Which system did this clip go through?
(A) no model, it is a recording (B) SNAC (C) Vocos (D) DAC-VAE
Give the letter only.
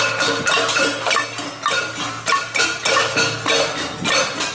A